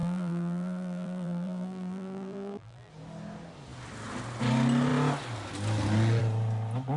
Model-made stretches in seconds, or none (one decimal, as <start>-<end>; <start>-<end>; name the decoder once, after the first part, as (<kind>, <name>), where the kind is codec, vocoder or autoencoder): 0.0-2.9 (vocoder, BigVGAN v2)